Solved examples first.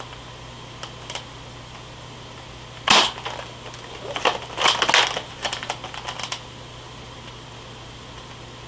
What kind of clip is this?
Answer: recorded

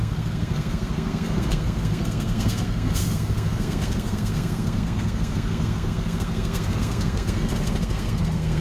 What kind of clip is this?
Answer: remade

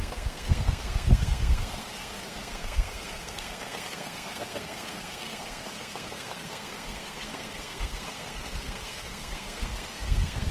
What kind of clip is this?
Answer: remade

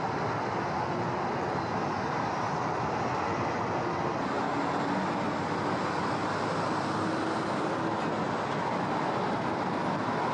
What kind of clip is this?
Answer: recorded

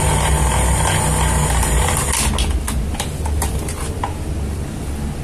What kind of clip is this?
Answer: recorded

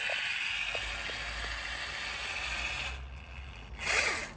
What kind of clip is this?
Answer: recorded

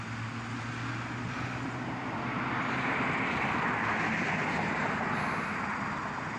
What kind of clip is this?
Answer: recorded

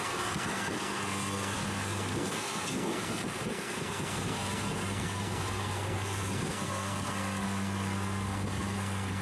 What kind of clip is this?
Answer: remade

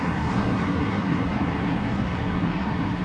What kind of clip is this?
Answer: remade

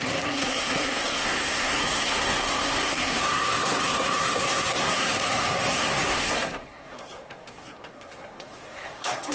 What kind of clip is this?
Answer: remade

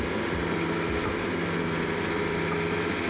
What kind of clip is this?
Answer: recorded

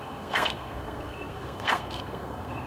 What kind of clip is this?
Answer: remade